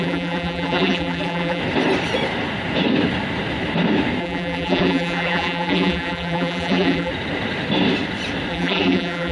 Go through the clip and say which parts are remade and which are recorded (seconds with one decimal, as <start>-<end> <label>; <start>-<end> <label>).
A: 0.0-1.6 remade; 1.6-4.2 recorded; 4.2-7.1 remade; 7.1-8.5 recorded; 8.5-9.3 remade